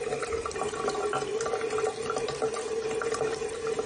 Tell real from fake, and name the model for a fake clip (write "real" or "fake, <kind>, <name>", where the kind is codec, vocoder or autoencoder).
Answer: real